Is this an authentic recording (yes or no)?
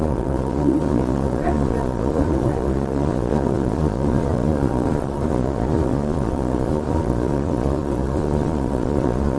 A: no